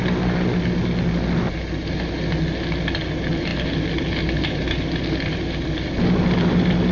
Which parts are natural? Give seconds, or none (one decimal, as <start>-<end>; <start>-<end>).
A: 0.0-6.9